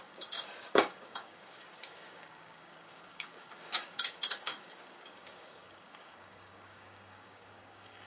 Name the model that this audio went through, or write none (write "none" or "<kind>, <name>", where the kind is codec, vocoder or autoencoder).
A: codec, DAC